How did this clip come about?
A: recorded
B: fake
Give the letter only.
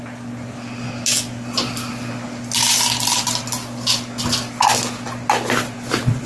A